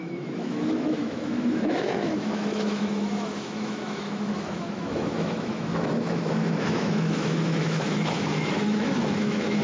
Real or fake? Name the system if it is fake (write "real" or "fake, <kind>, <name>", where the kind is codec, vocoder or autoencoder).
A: fake, autoencoder, DAC-VAE